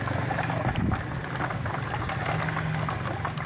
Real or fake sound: real